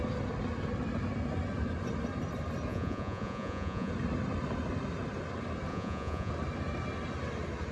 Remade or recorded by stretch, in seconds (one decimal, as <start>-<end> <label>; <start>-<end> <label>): 0.0-2.7 recorded; 2.7-3.9 remade; 3.9-5.7 recorded; 5.7-6.3 remade; 6.3-7.7 recorded